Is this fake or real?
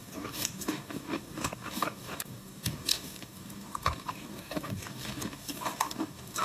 fake